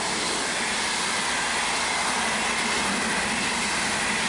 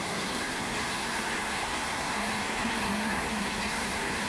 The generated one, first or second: second